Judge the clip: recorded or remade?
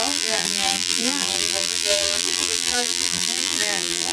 remade